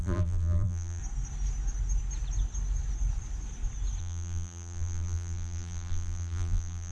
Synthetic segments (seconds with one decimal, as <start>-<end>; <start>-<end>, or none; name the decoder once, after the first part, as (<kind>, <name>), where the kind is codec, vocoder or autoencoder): 0.0-1.0 (vocoder, BigVGAN v2); 4.0-6.9

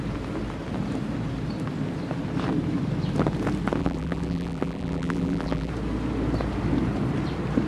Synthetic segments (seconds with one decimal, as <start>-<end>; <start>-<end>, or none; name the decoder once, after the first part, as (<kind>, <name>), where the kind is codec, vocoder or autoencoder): 3.8-5.7 (vocoder, BigVGAN v2)

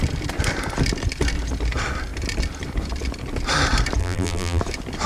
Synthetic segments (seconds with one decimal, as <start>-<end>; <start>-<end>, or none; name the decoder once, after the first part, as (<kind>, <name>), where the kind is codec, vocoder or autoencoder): 4.0-4.6 (vocoder, BigVGAN v2)

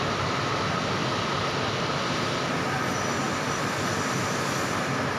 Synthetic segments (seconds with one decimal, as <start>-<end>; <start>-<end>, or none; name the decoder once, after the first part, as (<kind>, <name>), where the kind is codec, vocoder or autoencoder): none